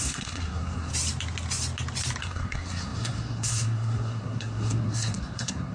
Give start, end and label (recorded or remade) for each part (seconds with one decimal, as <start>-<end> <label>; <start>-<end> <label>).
0.0-0.9 remade; 0.9-2.2 recorded; 2.2-5.7 remade